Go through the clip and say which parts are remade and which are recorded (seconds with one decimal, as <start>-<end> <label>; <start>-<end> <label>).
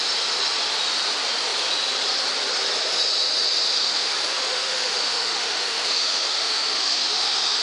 0.0-3.7 recorded; 3.7-7.6 remade